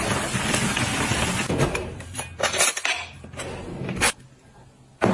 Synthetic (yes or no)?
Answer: no